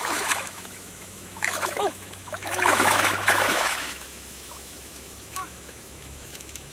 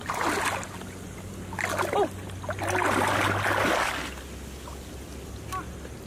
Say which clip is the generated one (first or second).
first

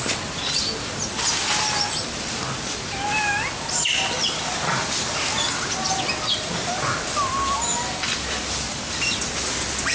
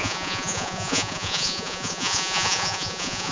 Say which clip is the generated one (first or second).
second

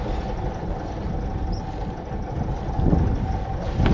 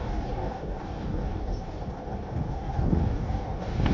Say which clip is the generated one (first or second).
second